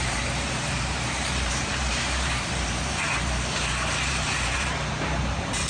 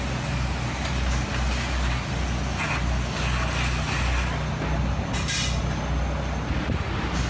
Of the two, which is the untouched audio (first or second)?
second